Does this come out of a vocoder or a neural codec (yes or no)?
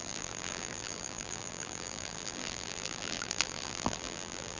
yes